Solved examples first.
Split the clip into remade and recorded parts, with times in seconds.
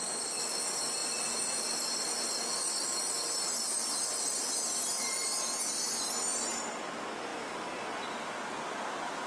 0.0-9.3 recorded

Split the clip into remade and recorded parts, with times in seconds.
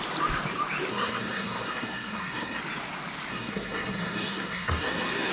0.0-0.9 recorded; 0.9-2.6 remade; 2.6-3.3 recorded; 3.3-5.3 remade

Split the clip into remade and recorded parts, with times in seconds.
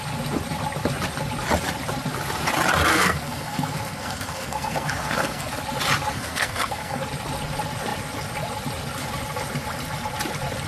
0.0-2.9 recorded; 2.9-5.5 remade; 5.5-6.1 recorded; 6.1-7.0 remade; 7.0-10.7 recorded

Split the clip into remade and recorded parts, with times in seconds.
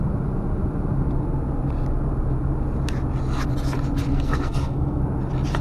0.0-4.1 recorded; 4.1-5.0 remade; 5.0-5.6 recorded